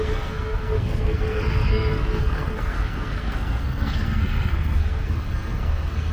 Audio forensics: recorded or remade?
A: remade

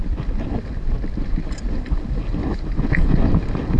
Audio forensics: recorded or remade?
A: recorded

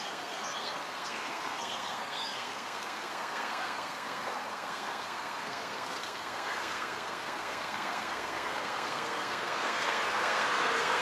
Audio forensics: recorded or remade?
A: remade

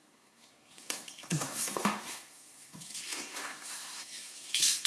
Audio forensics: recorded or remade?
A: remade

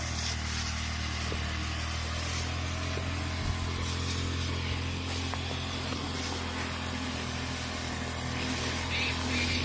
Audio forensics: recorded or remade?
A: recorded